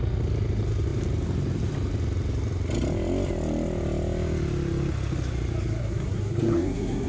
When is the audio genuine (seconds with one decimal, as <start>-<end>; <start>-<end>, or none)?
0.0-5.8